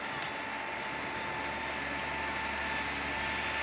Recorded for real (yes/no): yes